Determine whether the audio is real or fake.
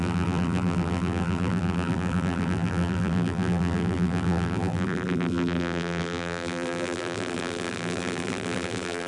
fake